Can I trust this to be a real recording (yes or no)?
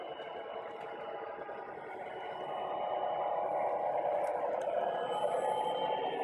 yes